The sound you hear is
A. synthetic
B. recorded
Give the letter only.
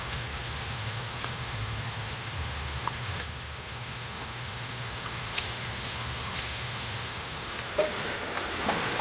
A